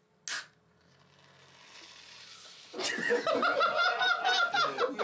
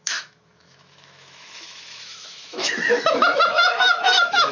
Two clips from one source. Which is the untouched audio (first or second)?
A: first